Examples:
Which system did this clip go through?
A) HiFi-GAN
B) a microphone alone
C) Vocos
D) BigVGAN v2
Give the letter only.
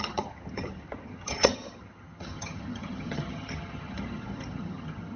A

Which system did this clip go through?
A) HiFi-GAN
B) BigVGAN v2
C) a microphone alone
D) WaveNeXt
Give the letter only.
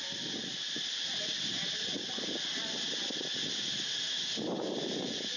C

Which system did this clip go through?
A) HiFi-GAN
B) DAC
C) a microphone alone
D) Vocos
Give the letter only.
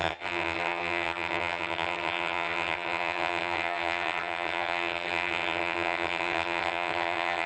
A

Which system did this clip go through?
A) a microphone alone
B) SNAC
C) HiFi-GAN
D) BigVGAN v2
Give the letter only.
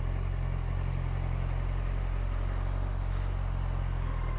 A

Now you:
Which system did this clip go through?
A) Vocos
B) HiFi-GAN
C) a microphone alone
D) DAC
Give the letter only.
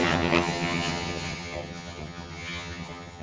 B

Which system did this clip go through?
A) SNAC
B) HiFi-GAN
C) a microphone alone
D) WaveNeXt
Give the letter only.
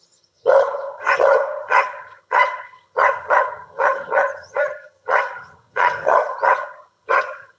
B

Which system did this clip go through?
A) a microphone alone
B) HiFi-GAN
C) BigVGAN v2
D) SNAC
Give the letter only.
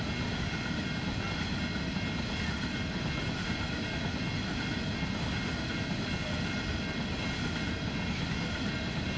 A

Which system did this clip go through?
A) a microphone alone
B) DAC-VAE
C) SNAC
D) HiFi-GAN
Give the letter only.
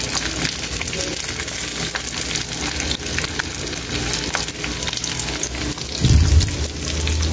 A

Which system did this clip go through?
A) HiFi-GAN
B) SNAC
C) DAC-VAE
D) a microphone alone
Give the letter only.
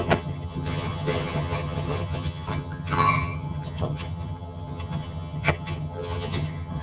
A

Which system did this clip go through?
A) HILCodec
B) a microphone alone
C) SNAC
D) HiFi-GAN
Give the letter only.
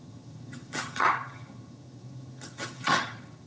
D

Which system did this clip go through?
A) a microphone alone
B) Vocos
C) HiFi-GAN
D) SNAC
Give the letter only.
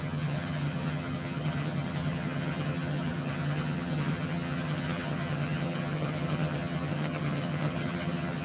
C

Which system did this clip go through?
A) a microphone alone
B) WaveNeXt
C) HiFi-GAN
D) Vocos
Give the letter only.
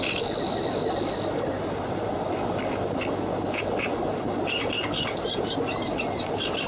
A